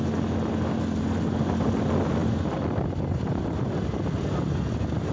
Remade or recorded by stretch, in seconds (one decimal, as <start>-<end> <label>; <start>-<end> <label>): 0.0-5.1 recorded

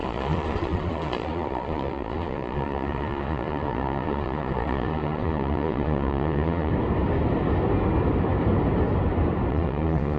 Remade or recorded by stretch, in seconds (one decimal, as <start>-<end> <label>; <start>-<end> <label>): 0.0-6.7 remade; 6.7-9.5 recorded; 9.5-10.2 remade

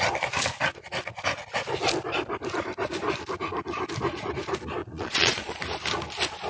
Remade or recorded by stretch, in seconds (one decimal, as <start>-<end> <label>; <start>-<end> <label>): 0.0-4.8 recorded; 4.8-5.5 remade; 5.5-6.5 recorded

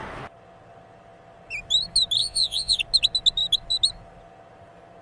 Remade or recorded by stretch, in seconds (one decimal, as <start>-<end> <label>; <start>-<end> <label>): 0.0-2.2 recorded; 2.2-2.8 remade; 2.8-5.0 recorded